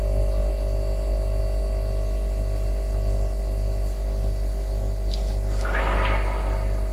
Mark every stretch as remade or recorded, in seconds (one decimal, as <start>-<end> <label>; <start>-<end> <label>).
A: 0.0-6.9 recorded